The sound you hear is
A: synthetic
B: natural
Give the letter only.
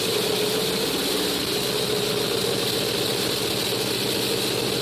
B